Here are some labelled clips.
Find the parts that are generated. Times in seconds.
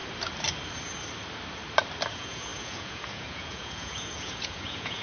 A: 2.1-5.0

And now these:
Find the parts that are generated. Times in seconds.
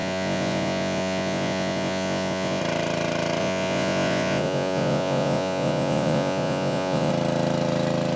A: 0.0-2.6; 3.4-7.1